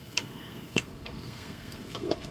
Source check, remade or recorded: remade